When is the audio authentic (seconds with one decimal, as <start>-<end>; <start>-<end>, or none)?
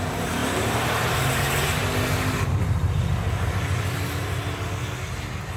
1.8-5.6